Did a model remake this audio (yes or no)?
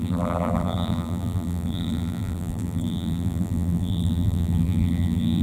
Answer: yes